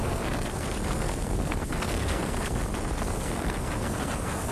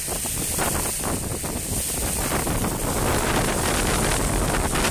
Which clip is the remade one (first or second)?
first